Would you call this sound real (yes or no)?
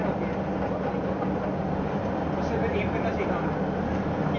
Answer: yes